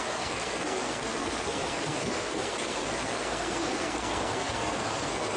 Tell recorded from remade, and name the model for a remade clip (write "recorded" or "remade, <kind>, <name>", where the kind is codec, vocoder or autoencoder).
remade, codec, SNAC